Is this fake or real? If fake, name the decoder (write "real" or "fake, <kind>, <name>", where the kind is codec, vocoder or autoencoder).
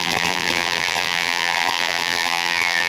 fake, vocoder, BigVGAN v2